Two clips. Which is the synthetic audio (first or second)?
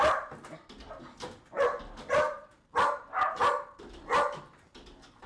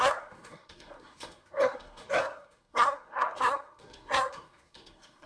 second